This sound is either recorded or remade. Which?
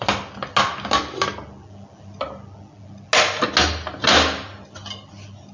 recorded